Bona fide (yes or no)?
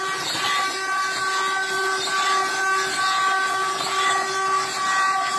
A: yes